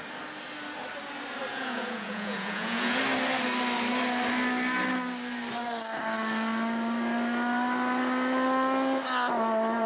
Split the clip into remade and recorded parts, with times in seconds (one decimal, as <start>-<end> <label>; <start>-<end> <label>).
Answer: 0.0-1.5 recorded; 1.5-3.0 remade; 3.0-9.9 recorded